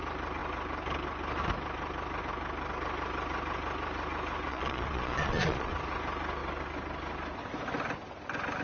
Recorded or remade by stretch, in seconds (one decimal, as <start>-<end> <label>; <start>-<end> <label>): 0.0-4.5 recorded; 4.5-5.7 remade; 5.7-8.6 recorded

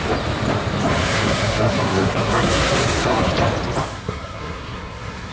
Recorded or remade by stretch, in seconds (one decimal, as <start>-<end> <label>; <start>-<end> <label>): 0.0-1.0 recorded; 1.0-3.3 remade; 3.3-3.8 recorded; 3.8-5.3 remade

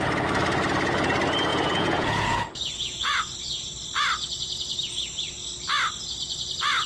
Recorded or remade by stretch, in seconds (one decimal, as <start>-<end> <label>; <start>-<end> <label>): 0.0-1.5 recorded; 1.5-3.2 remade; 3.2-6.9 recorded

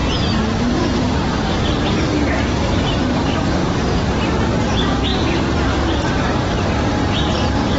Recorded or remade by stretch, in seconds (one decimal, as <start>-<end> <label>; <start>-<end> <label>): 0.0-0.6 recorded; 0.6-3.6 remade; 3.6-4.6 recorded; 4.6-7.8 remade

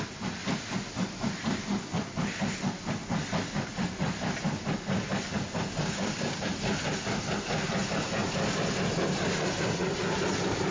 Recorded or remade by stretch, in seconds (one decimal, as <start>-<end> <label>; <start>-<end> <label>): 0.0-5.8 recorded; 5.8-6.4 remade; 6.4-10.7 recorded

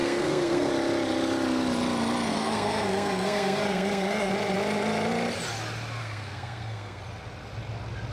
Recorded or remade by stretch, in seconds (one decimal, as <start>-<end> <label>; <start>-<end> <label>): 0.0-0.7 remade; 0.7-2.3 recorded; 2.3-4.3 remade; 4.3-6.0 recorded; 6.0-7.0 remade; 7.0-8.1 recorded

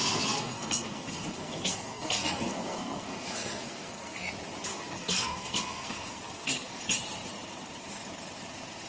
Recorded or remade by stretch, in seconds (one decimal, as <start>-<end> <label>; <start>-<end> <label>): 0.0-4.3 remade; 4.3-4.7 recorded; 4.7-6.8 remade; 6.8-8.9 recorded

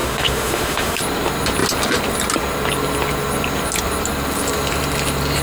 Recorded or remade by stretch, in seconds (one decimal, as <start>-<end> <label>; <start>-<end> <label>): 0.0-1.0 remade; 1.0-5.4 recorded